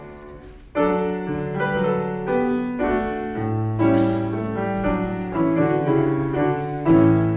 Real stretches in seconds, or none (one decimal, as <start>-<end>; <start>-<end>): 0.0-5.1